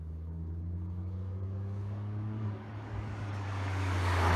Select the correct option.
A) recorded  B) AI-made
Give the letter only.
B